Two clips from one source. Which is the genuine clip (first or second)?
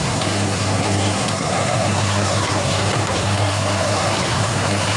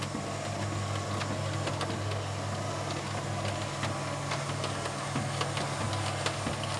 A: second